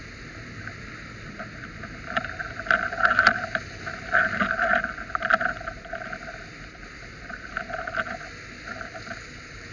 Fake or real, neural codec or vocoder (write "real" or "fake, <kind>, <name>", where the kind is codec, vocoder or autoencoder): real